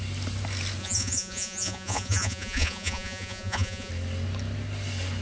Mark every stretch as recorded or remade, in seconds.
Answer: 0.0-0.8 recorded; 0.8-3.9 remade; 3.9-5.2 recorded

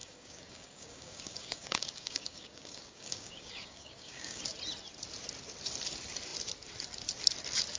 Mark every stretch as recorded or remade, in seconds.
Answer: 0.0-4.4 remade; 4.4-7.8 recorded

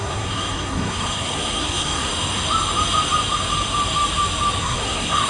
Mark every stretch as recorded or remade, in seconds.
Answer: 0.0-2.1 remade; 2.1-4.6 recorded; 4.6-5.3 remade

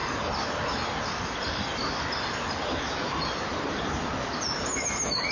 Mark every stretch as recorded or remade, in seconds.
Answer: 0.0-1.0 recorded; 1.0-1.8 remade; 1.8-5.3 recorded

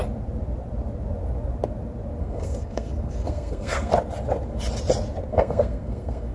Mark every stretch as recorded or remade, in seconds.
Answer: 0.0-2.2 recorded; 2.2-3.9 remade; 3.9-5.3 recorded; 5.3-6.3 remade

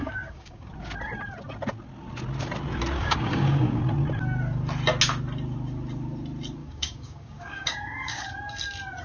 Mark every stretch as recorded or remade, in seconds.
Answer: 0.0-0.7 remade; 0.7-3.0 recorded; 3.0-3.8 remade; 3.8-6.6 recorded; 6.6-8.3 remade; 8.3-9.0 recorded

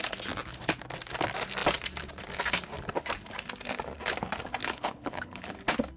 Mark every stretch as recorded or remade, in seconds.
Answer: 0.0-4.6 recorded; 4.6-5.6 remade; 5.6-6.0 recorded